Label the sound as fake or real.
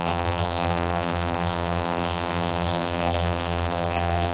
fake